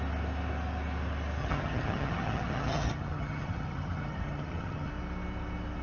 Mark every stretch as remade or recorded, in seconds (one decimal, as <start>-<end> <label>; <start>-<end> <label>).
0.0-1.4 recorded; 1.4-4.9 remade; 4.9-5.8 recorded